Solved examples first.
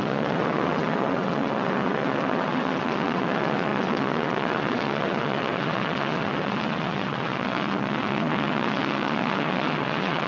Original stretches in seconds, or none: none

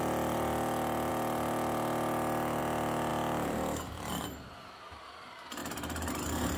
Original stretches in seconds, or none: 0.0-3.1; 4.1-5.6; 6.1-6.6

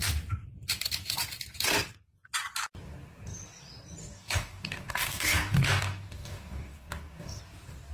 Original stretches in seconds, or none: 0.0-4.0; 7.4-7.9

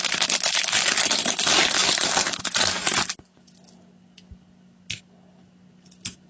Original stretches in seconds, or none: 0.0-1.8; 2.5-6.3

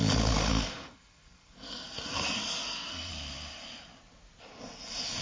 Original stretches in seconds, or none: 0.0-0.5; 3.1-5.2

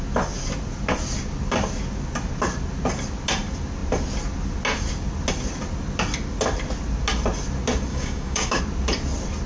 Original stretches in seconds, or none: 0.0-7.9; 8.6-9.5

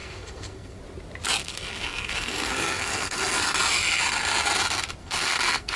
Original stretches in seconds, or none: 0.8-1.4; 3.4-5.0

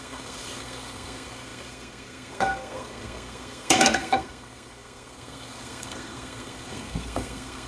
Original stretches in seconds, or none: none